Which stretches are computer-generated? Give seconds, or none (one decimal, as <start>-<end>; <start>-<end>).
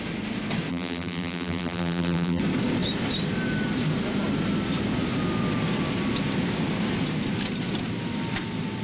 0.7-2.4